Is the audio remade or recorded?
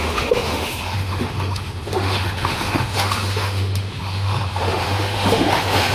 remade